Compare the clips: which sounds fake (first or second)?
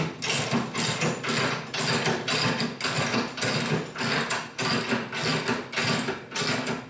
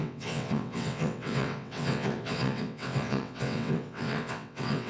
second